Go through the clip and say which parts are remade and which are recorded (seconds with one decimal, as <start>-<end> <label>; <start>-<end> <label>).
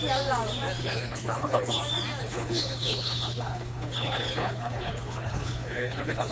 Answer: 0.0-0.8 recorded; 0.8-1.8 remade; 1.8-2.2 recorded; 2.2-6.3 remade